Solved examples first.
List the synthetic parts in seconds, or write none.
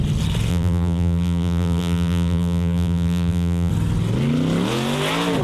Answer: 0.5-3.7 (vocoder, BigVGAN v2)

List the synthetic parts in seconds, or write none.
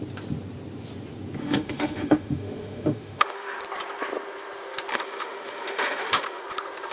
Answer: 1.4-3.6 (autoencoder, DAC-VAE); 4.9-6.4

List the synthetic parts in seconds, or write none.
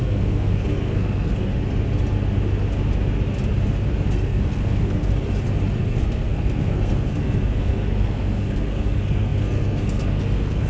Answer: 0.0-1.5 (codec, SNAC); 4.1-5.1; 5.8-10.7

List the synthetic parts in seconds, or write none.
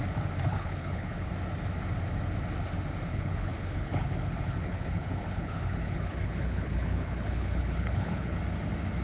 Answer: 0.5-1.3 (codec, HILCodec); 3.1-8.4